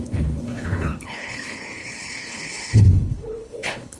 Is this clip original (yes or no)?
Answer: no